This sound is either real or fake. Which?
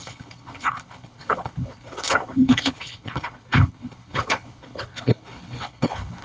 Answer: fake